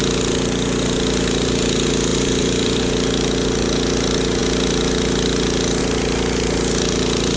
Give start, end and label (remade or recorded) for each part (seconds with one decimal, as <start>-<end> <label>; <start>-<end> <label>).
0.0-2.1 recorded; 2.1-2.8 remade; 2.8-7.4 recorded